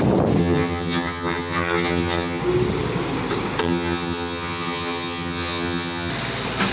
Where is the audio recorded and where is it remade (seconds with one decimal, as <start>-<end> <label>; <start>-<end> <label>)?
0.0-0.4 recorded; 0.4-2.4 remade; 2.4-3.6 recorded; 3.6-6.1 remade; 6.1-6.7 recorded